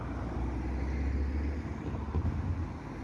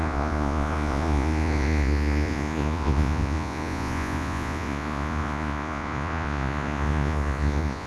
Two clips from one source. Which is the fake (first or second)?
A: second